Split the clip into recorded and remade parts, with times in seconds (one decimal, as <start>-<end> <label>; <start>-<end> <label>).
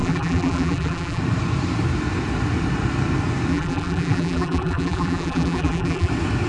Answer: 0.0-1.2 remade; 1.2-3.5 recorded; 3.5-6.1 remade; 6.1-6.5 recorded